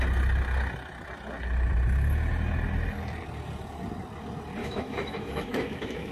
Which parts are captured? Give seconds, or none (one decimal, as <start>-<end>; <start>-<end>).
0.0-4.6